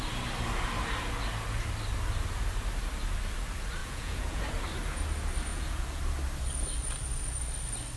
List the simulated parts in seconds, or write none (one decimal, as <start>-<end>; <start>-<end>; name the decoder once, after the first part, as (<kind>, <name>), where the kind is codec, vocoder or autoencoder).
3.8-4.4 (vocoder, Vocos); 5.5-6.0